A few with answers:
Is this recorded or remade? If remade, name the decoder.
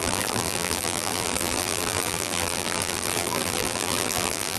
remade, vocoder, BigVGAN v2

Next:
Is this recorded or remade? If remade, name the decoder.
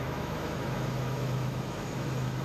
remade, autoencoder, DAC-VAE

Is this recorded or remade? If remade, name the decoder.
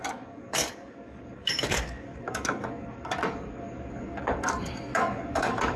remade, codec, DAC